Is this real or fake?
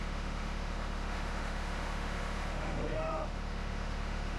fake